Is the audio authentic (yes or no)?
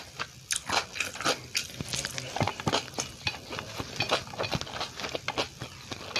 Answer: yes